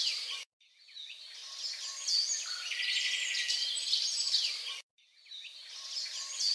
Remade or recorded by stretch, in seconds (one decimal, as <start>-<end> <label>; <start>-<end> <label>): 0.0-1.4 remade; 1.4-5.3 recorded; 5.3-6.5 remade